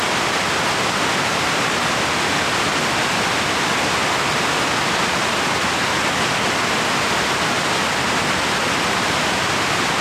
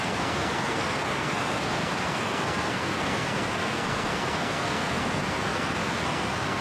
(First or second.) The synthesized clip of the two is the second